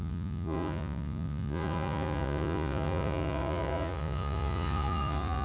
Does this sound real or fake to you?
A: fake